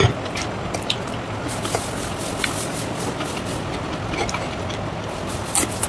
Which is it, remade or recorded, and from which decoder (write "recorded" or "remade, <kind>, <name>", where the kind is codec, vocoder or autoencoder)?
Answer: recorded